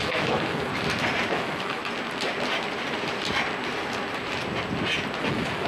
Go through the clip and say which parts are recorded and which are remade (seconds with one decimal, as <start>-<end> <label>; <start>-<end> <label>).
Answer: 0.0-0.7 remade; 0.7-1.3 recorded; 1.3-1.8 remade; 1.8-5.2 recorded; 5.2-5.7 remade